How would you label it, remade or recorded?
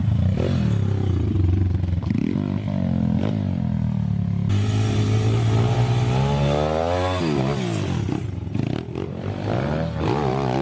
recorded